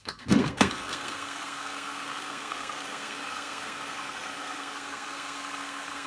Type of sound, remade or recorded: remade